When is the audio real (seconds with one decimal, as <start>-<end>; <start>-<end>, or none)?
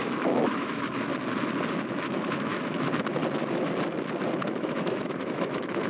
1.1-2.1; 3.2-4.4